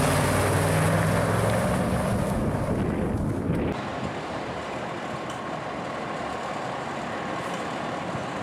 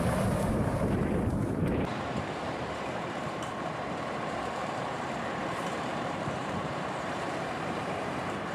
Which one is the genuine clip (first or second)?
first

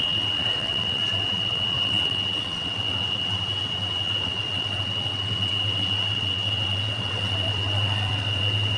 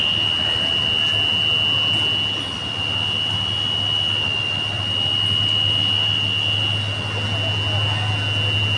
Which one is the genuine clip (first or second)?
second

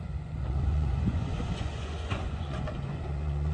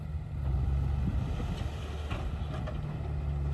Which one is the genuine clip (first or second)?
second